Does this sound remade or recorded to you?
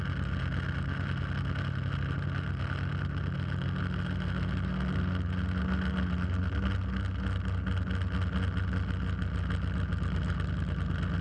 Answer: recorded